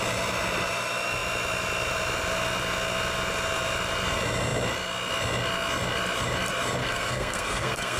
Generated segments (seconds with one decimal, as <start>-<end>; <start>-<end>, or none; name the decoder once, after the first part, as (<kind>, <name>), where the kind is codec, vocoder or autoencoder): 6.8-8.0 (codec, SNAC)